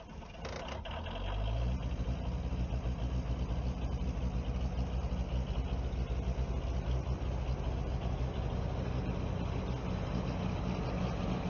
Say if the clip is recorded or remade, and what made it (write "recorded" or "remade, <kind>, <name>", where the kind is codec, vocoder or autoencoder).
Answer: recorded